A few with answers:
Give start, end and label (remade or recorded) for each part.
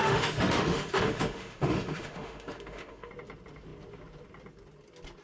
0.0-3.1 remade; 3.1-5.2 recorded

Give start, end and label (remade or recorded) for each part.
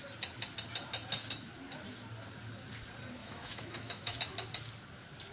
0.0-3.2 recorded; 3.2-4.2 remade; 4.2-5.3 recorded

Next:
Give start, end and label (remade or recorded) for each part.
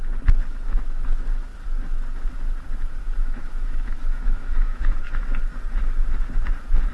0.0-3.0 recorded; 3.0-5.1 remade; 5.1-6.9 recorded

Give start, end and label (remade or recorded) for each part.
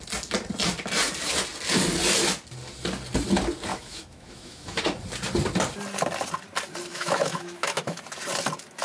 0.0-3.7 recorded; 3.7-4.8 remade; 4.8-6.9 recorded; 6.9-8.0 remade; 8.0-8.8 recorded